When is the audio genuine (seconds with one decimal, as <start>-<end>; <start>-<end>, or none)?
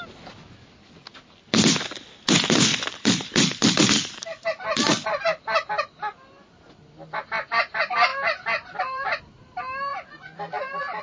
0.0-2.7; 5.2-8.1; 9.3-9.9